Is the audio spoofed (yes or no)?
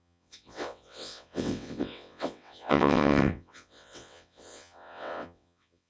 yes